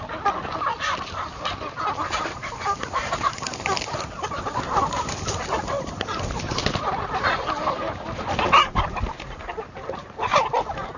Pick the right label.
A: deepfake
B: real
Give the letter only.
B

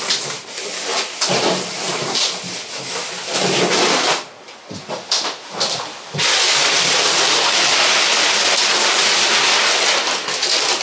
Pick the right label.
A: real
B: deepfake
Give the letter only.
A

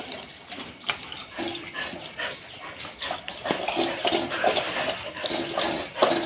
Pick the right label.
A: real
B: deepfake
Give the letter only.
A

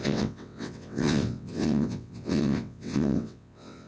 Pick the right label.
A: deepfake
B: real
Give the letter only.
A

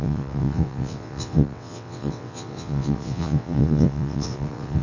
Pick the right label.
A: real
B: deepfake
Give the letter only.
B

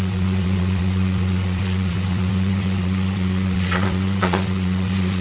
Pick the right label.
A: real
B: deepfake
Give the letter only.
B